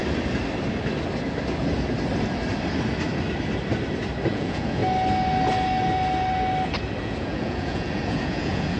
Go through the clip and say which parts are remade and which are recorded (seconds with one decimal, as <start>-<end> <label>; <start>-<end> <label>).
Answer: 0.0-4.3 recorded; 4.3-4.8 remade; 4.8-7.0 recorded; 7.0-8.8 remade